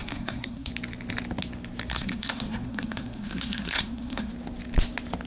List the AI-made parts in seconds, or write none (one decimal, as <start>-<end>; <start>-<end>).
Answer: 0.0-0.7; 1.9-4.3